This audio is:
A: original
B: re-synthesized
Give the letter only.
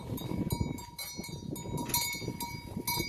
A